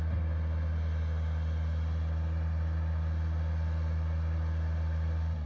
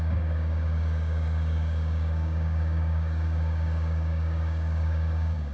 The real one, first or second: first